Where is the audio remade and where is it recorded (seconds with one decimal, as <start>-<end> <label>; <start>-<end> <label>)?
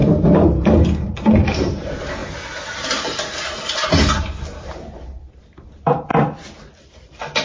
0.0-6.1 remade; 6.1-6.8 recorded; 6.8-7.4 remade